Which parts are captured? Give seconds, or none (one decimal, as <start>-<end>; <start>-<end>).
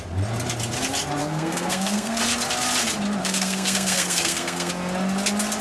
0.0-1.2; 2.2-3.2; 4.7-5.6